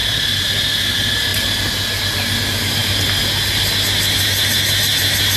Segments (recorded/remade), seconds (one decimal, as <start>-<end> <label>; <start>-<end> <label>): 0.0-0.5 remade; 0.5-5.4 recorded